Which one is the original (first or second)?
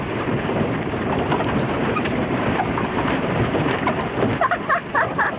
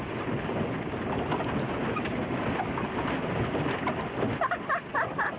second